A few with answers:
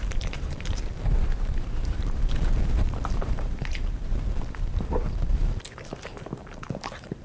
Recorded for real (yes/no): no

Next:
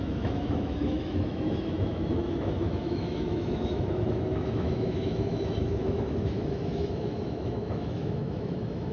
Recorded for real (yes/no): no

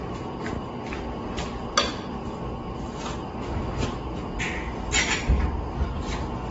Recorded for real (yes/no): yes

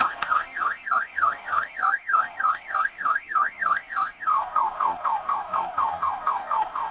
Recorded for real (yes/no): no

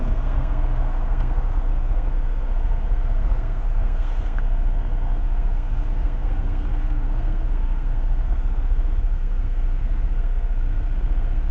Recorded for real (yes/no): no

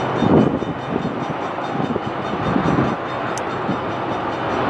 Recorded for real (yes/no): yes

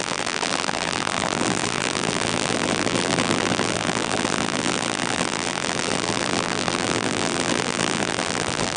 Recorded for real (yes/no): no